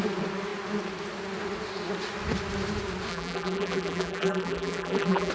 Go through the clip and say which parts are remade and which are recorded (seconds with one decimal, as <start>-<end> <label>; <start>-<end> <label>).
0.0-3.1 recorded; 3.1-5.3 remade